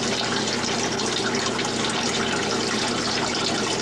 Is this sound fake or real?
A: real